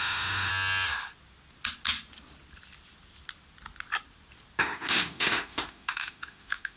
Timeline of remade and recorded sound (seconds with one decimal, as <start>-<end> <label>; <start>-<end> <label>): 0.0-0.5 remade; 0.5-4.6 recorded; 4.6-6.8 remade